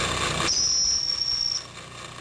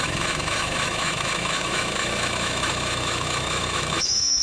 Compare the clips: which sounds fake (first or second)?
second